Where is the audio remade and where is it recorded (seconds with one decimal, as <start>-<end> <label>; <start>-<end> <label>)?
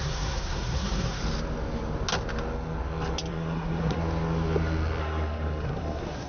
0.0-1.2 remade; 1.2-3.3 recorded; 3.3-4.0 remade; 4.0-5.0 recorded; 5.0-6.3 remade